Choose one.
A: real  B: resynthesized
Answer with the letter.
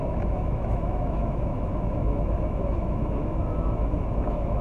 B